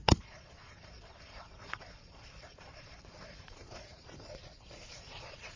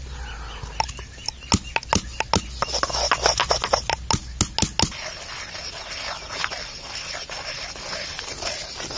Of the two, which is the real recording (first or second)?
second